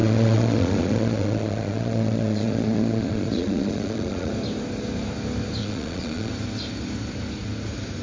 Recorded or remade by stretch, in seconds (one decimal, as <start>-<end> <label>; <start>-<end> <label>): 0.0-4.3 remade; 4.3-5.6 recorded; 5.6-6.3 remade; 6.3-8.0 recorded